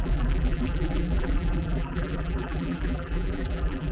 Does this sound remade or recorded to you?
remade